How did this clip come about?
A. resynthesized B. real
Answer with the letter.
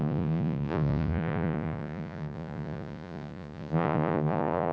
A